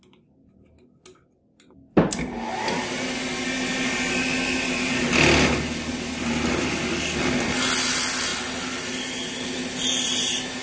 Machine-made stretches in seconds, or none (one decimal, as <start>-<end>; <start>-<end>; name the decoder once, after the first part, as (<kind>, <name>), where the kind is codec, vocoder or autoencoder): none